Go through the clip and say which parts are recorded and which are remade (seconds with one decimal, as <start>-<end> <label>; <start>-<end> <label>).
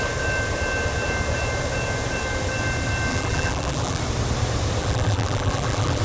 0.0-3.1 recorded; 3.1-4.0 remade; 4.0-4.8 recorded; 4.8-6.0 remade